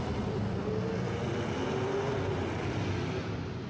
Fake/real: real